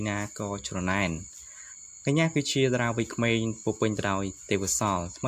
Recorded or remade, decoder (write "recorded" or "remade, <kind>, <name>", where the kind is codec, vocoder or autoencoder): recorded